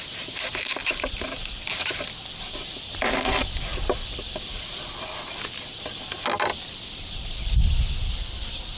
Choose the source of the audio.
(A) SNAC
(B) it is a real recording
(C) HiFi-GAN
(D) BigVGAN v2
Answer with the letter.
B